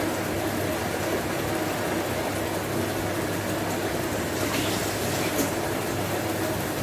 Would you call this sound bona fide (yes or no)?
yes